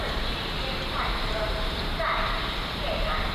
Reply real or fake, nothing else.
fake